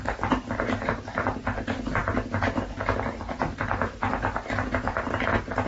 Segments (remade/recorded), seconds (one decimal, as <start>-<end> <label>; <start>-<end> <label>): 0.0-5.7 recorded